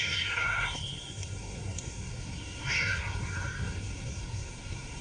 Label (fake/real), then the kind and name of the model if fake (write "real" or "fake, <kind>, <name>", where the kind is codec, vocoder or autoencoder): fake, codec, SNAC